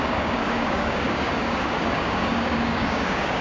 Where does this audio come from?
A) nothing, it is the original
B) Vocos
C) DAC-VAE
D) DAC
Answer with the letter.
D